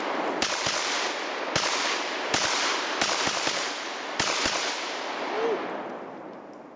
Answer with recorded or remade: recorded